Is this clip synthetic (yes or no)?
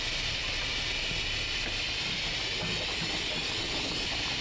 no